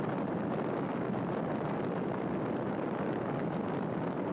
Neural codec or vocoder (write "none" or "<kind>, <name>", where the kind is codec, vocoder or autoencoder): none